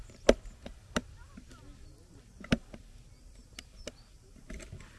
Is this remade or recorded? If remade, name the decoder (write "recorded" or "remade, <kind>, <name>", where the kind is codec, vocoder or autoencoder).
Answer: recorded